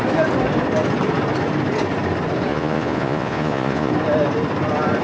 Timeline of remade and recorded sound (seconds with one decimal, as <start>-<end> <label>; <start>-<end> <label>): 0.0-2.5 recorded; 2.5-3.9 remade; 3.9-5.0 recorded